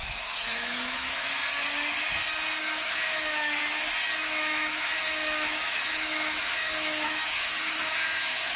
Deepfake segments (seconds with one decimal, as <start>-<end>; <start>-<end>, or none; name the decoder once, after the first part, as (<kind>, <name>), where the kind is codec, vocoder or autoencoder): 0.0-1.4 (autoencoder, DAC-VAE); 2.6-3.6; 4.1-8.6